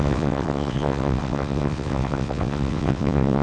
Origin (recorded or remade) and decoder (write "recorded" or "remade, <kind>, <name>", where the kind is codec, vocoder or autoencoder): remade, vocoder, WaveNeXt